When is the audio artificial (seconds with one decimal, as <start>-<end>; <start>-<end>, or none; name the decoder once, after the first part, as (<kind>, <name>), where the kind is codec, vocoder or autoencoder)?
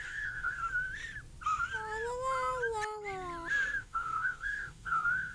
0.0-0.6 (codec, DAC); 3.8-5.3